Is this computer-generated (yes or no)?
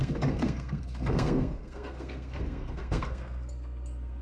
yes